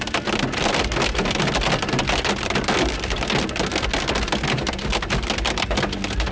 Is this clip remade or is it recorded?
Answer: recorded